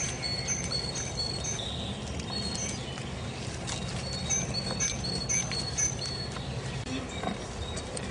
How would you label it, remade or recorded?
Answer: recorded